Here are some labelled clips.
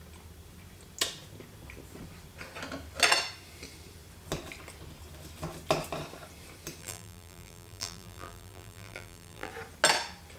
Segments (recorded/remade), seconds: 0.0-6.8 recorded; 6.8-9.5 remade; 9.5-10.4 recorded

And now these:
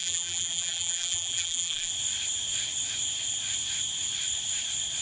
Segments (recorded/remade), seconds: 0.0-1.9 remade; 1.9-5.0 recorded

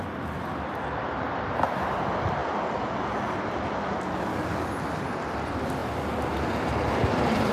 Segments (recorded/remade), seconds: 0.0-2.4 remade; 2.4-5.1 recorded; 5.1-5.8 remade; 5.8-6.8 recorded; 6.8-7.5 remade

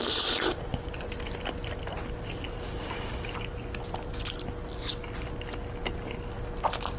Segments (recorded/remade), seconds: 0.0-0.7 recorded; 0.7-2.9 remade; 2.9-7.0 recorded

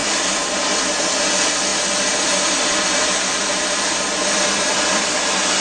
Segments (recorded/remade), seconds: 0.0-1.1 remade; 1.1-1.7 recorded; 1.7-5.1 remade; 5.1-5.6 recorded